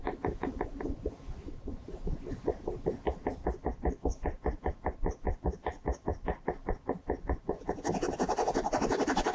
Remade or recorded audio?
remade